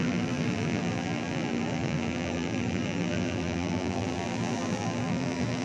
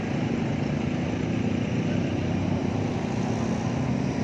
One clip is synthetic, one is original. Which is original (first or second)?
second